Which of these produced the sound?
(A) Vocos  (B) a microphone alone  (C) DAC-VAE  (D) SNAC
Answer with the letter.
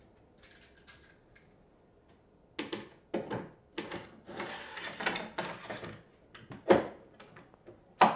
B